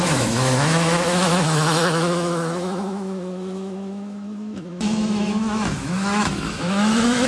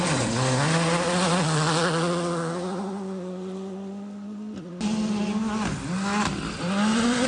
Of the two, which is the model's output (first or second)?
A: first